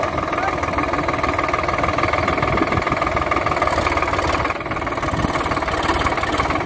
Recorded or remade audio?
recorded